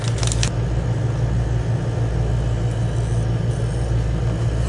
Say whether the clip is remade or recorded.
recorded